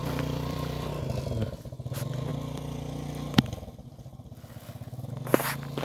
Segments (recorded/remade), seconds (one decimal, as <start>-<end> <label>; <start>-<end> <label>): 0.0-0.9 remade; 0.9-5.8 recorded